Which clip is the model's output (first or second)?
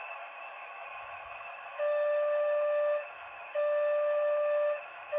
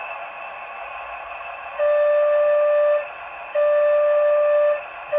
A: first